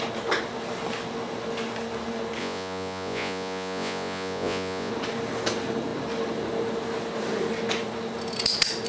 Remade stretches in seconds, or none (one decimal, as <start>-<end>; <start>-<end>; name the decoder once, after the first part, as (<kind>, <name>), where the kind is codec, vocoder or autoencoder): 2.4-4.9 (vocoder, Vocos)